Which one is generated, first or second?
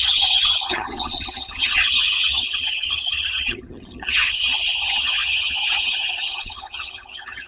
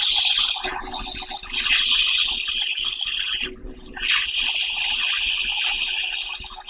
first